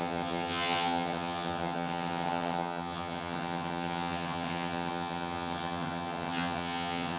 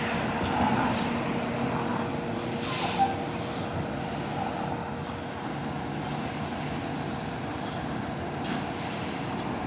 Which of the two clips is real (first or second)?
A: second